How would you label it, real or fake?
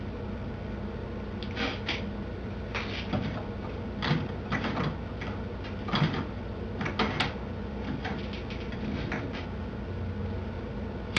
real